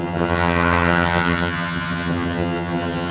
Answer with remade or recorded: remade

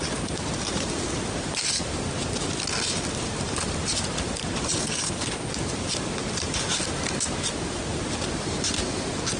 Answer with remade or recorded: recorded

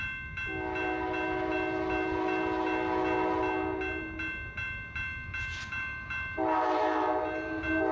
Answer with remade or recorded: recorded